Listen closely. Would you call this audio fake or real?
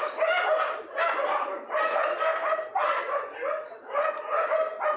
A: real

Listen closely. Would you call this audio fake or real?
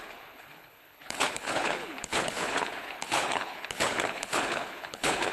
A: fake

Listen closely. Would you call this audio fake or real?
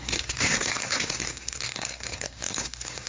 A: fake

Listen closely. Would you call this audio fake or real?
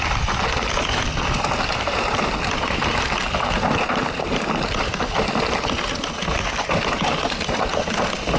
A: real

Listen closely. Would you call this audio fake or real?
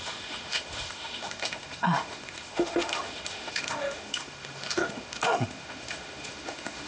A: fake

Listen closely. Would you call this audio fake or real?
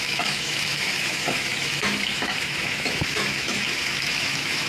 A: fake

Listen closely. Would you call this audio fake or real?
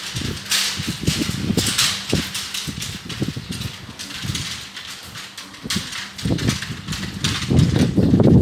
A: real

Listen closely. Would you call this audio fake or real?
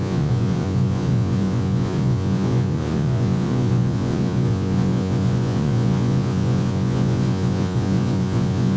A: fake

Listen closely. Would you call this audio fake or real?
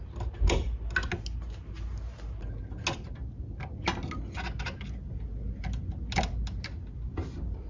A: real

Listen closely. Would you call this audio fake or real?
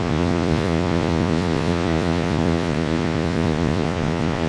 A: fake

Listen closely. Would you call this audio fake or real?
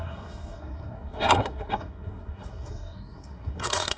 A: fake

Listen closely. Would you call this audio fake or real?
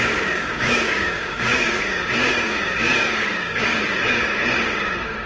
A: fake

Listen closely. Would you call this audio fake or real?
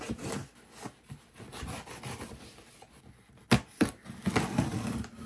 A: real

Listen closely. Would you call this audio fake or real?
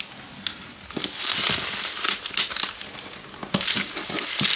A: real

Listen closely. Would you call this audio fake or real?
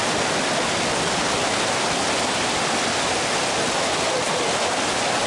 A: real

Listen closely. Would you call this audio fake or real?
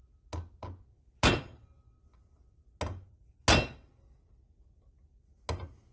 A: real